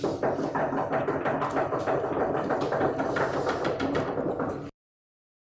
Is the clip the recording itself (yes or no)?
yes